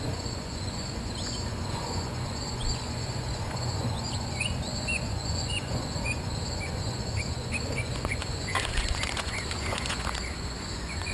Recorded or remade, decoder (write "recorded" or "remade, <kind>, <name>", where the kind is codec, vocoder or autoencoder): remade, vocoder, Vocos